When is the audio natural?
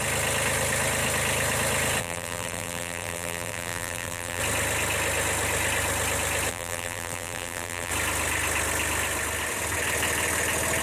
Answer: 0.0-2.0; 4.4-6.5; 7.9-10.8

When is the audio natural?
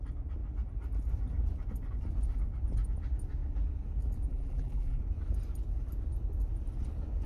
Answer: 0.0-4.3; 5.0-7.3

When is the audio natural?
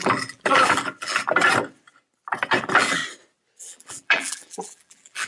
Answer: 1.2-2.6; 3.0-3.6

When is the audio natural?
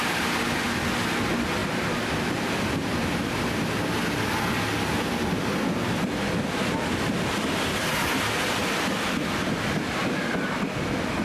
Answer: 0.0-11.2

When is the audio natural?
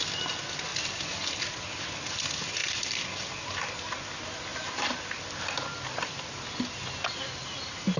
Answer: 0.0-0.7; 1.3-2.6; 3.4-4.5; 5.4-8.0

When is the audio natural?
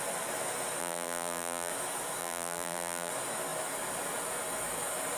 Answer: 0.0-0.8; 1.7-2.2; 3.1-5.2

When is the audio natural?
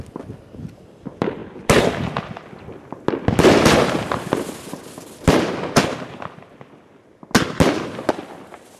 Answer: 0.0-8.8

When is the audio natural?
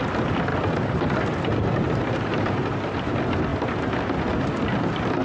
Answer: 0.0-0.5; 3.1-5.2